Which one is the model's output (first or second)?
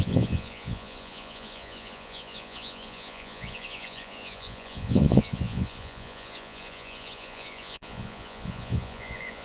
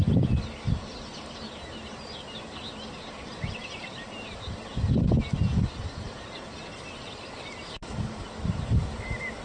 first